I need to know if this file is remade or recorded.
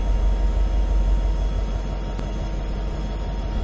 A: recorded